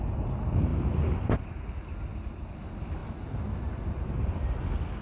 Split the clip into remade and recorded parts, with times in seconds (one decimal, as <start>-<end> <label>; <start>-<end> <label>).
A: 0.0-5.0 recorded